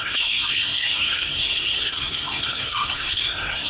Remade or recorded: remade